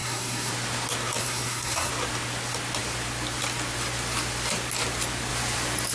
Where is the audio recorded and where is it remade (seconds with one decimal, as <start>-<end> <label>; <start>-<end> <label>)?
0.0-0.5 remade; 0.5-1.2 recorded; 1.2-1.9 remade; 1.9-5.9 recorded